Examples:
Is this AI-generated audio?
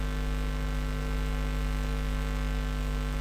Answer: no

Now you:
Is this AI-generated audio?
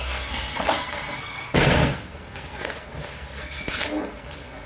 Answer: yes